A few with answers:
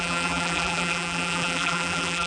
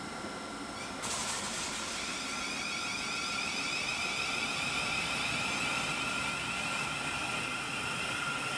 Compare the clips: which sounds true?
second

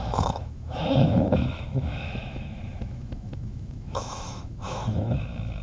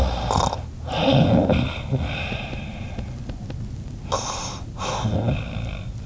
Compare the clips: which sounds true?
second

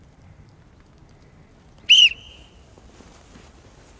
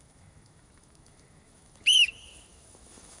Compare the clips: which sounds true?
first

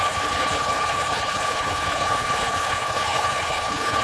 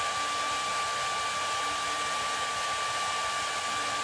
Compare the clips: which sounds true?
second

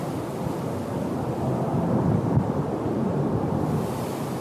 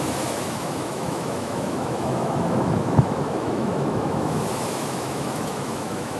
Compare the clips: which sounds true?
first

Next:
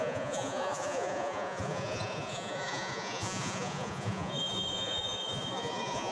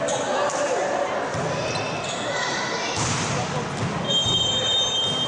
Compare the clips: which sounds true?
second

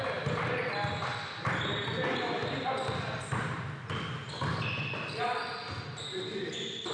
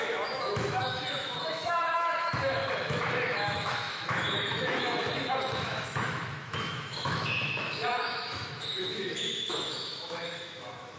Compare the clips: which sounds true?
first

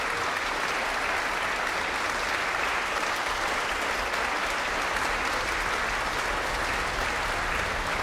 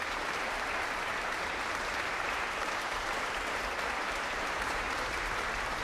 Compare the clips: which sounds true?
first